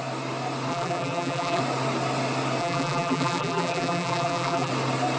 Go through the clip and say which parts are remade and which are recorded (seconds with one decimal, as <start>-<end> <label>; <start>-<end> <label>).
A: 0.0-0.7 recorded; 0.7-1.6 remade; 1.6-2.6 recorded; 2.6-4.7 remade; 4.7-5.2 recorded